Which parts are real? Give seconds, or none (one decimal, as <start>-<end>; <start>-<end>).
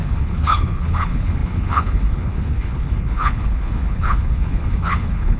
none